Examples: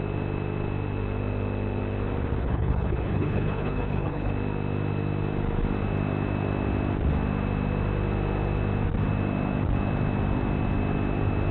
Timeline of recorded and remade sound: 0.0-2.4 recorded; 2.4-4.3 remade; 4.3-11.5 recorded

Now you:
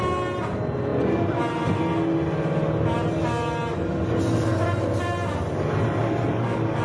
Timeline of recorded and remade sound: 0.0-6.0 recorded; 6.0-6.8 remade

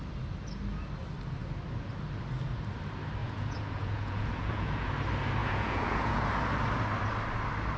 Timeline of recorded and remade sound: 0.0-3.2 recorded; 3.2-4.9 remade; 4.9-5.4 recorded; 5.4-6.3 remade; 6.3-7.8 recorded

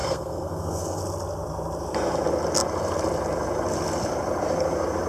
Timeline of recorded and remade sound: 0.0-1.0 remade; 1.0-5.1 recorded

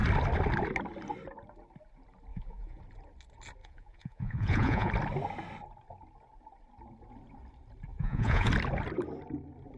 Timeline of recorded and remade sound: 0.0-2.3 recorded; 2.3-2.8 remade; 2.8-3.6 recorded; 3.6-4.9 remade; 4.9-7.9 recorded; 7.9-8.5 remade; 8.5-9.8 recorded

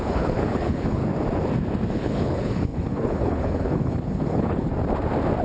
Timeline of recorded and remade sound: 0.0-1.0 remade; 1.0-1.9 recorded; 1.9-4.7 remade; 4.7-5.4 recorded